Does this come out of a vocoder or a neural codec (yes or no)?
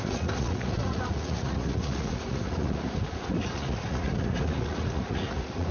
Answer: yes